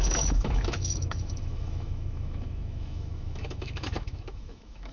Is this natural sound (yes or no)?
no